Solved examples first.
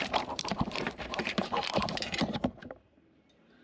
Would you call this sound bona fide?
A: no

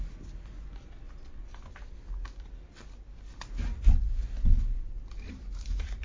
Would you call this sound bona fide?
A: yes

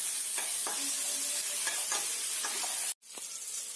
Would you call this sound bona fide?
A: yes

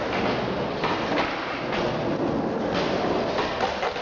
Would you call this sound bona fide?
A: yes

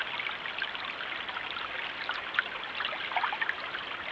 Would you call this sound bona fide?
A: yes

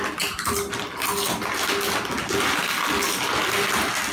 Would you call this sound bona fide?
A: yes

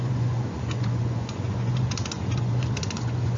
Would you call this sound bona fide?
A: no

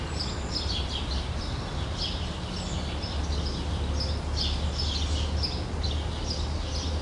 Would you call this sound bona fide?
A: yes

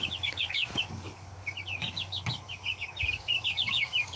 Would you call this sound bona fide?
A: no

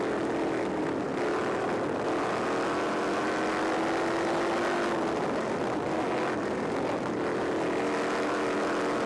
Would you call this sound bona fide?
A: yes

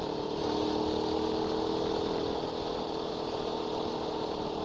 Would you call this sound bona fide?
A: yes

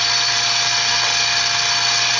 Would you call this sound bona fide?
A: yes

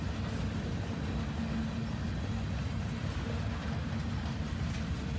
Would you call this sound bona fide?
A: yes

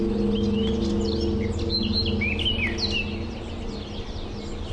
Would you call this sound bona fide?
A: yes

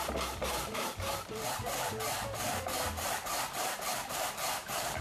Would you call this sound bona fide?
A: no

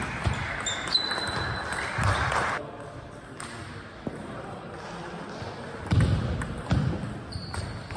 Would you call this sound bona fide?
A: yes